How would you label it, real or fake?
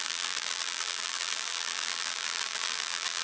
fake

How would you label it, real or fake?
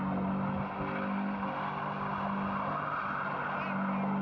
real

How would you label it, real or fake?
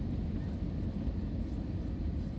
real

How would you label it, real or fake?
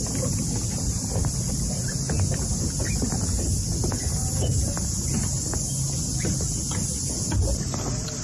real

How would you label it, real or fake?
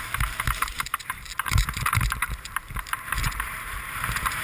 fake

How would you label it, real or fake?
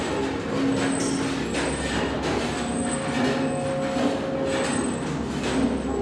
real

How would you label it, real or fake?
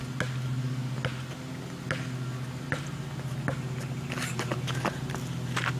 real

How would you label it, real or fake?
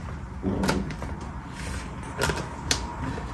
real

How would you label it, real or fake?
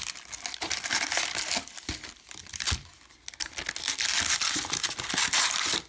real